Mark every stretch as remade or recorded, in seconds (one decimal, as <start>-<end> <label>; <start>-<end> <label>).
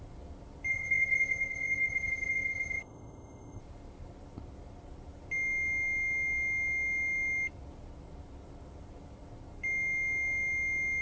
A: 0.0-0.7 recorded; 0.7-3.6 remade; 3.6-11.0 recorded